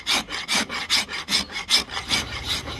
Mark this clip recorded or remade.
remade